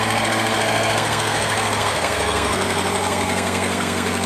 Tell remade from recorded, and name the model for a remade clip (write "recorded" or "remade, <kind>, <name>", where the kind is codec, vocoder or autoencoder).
remade, codec, SNAC